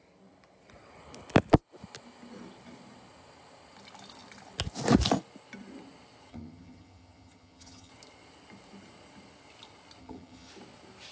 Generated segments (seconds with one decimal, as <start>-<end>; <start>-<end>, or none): 6.3-7.9; 10.0-10.5